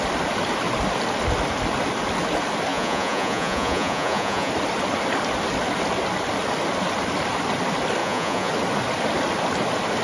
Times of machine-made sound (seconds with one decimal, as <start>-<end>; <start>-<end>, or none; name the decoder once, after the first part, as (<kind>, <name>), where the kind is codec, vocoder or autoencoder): 2.7-4.5 (vocoder, Vocos); 8.0-8.5